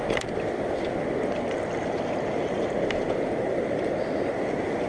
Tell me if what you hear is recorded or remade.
recorded